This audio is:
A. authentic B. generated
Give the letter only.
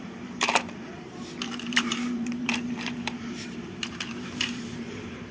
B